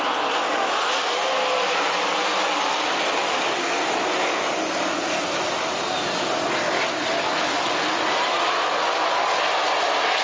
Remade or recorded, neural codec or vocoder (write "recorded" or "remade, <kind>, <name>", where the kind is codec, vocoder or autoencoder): recorded